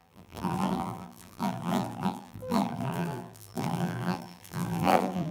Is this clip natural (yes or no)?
no